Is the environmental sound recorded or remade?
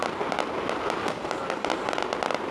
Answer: recorded